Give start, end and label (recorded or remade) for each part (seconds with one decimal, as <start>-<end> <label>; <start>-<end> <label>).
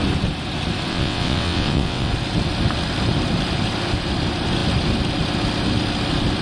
0.0-0.9 recorded; 0.9-2.1 remade; 2.1-6.4 recorded